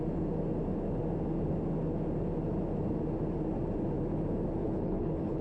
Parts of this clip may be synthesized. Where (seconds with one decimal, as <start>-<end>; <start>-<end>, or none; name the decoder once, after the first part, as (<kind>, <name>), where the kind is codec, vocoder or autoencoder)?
4.6-5.4 (codec, HILCodec)